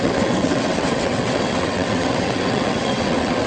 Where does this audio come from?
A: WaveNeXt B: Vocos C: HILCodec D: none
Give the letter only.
A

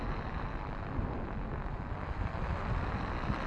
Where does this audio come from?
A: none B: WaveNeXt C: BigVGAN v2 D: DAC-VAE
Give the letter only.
A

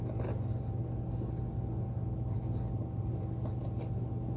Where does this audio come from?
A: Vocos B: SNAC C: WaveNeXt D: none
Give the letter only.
D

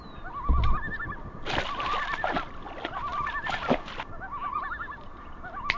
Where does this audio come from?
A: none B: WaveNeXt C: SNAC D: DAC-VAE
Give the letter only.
A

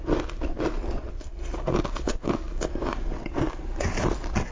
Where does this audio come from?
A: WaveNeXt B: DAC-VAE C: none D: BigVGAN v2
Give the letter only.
C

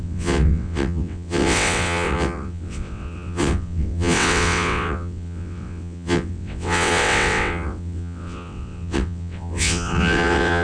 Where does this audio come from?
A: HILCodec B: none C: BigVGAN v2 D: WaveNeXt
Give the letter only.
D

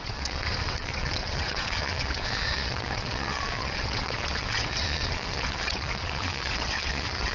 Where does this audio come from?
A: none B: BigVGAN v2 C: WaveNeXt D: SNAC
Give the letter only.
C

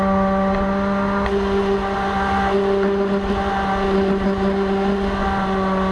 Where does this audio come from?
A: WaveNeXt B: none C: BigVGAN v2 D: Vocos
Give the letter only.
B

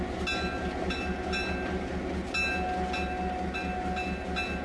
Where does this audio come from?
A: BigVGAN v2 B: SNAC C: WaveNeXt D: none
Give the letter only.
D